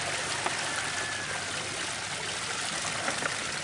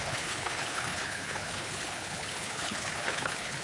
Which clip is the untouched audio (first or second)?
first